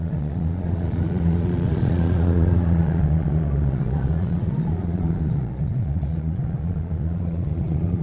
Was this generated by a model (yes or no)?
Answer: yes